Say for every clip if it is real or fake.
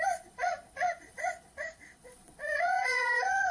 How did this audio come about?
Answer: fake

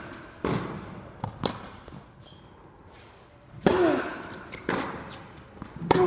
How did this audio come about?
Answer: real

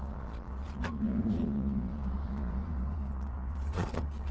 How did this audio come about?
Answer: fake